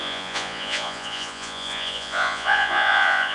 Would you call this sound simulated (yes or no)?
yes